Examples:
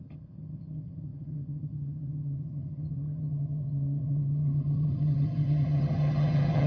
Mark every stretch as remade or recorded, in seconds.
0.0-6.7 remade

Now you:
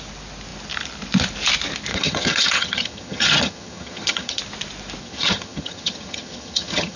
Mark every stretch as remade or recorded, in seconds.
0.0-1.9 recorded; 1.9-4.4 remade; 4.4-5.0 recorded; 5.0-7.0 remade

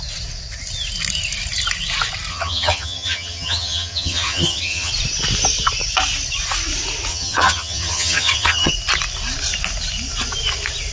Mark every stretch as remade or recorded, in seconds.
0.0-2.3 recorded; 2.3-4.9 remade; 4.9-7.1 recorded; 7.1-8.7 remade; 8.7-10.9 recorded

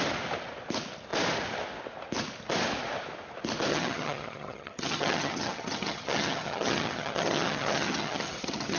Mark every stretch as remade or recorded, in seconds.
0.0-3.7 recorded; 3.7-8.8 remade

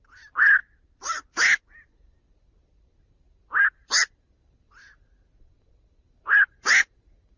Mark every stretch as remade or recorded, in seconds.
0.0-7.4 recorded

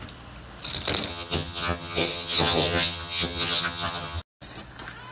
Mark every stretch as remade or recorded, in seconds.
0.0-1.1 recorded; 1.1-4.2 remade; 4.2-5.1 recorded